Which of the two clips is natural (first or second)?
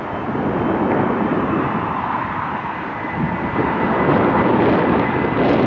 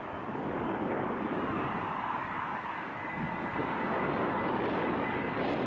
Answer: first